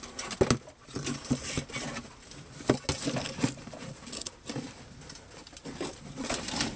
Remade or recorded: recorded